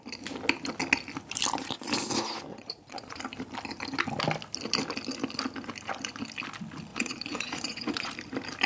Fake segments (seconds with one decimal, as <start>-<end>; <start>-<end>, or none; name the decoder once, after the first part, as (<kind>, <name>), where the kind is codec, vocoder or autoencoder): 2.5-3.2 (vocoder, Vocos); 6.9-8.1